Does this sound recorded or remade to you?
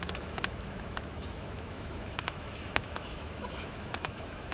remade